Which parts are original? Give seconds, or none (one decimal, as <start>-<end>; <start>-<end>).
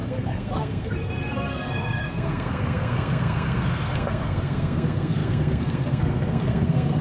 none